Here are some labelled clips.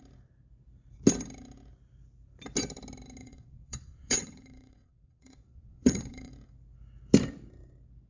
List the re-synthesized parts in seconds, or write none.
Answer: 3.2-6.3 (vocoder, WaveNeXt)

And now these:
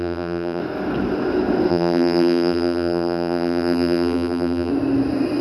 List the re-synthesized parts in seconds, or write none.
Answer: 0.0-0.6 (vocoder, BigVGAN v2); 1.7-4.7